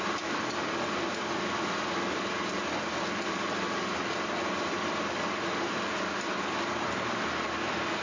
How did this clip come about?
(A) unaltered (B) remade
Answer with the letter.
A